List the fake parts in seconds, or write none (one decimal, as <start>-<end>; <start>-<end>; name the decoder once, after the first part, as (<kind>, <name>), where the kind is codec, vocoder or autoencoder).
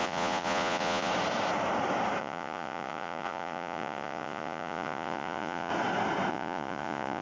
0.0-1.1 (vocoder, Vocos); 2.2-5.7; 6.3-7.2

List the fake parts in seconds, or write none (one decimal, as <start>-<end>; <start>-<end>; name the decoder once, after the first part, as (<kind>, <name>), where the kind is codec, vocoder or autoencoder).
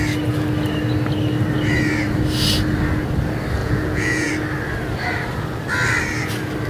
3.6-4.3 (vocoder, Vocos)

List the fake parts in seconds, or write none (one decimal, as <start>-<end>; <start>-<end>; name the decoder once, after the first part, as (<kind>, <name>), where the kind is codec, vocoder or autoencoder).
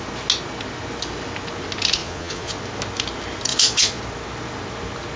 2.0-2.6 (vocoder, Vocos); 3.5-4.0